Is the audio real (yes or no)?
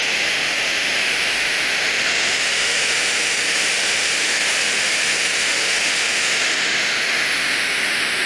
no